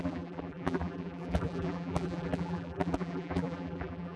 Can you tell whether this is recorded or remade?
remade